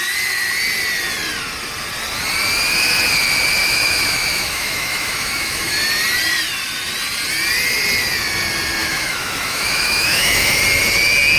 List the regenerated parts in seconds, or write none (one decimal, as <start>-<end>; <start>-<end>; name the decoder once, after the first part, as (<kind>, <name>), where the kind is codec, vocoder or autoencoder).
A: 3.6-5.7 (autoencoder, DAC-VAE); 8.8-10.6